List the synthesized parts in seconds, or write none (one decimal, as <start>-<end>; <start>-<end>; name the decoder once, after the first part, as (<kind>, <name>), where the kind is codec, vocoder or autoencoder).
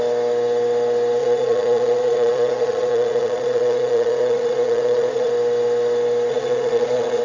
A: 1.2-5.3 (vocoder, Vocos); 6.3-7.2